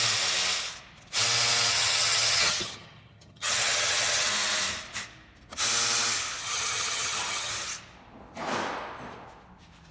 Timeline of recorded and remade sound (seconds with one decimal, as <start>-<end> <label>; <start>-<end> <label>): 0.0-1.7 recorded; 1.7-4.3 remade; 4.3-6.4 recorded; 6.4-7.5 remade; 7.5-9.9 recorded